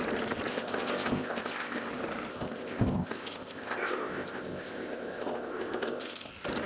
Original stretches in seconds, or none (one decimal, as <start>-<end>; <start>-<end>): 0.0-0.5; 1.9-2.3; 6.3-6.7